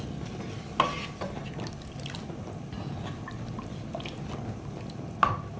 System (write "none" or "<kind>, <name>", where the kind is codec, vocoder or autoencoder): none